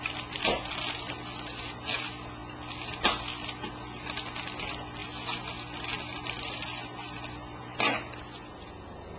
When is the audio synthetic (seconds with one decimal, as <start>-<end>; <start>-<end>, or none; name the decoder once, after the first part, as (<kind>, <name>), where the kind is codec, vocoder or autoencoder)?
none